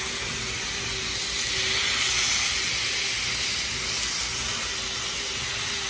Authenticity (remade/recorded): recorded